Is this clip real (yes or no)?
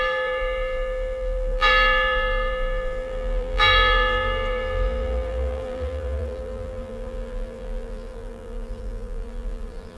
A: no